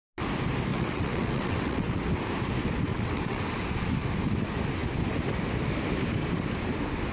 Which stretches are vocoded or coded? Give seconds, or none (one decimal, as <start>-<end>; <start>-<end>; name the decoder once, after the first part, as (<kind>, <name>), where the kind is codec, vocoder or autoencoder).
0.7-2.0 (vocoder, WaveNeXt); 2.9-3.4